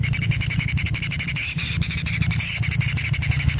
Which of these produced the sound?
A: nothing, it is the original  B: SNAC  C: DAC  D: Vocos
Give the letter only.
A